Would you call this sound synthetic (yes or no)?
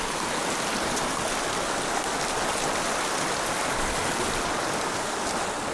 no